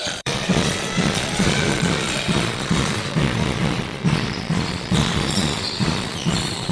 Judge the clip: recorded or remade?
remade